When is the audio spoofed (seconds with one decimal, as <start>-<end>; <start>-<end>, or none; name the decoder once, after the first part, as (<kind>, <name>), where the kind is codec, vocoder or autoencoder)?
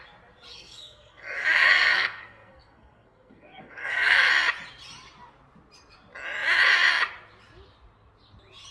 0.5-4.3 (codec, SNAC)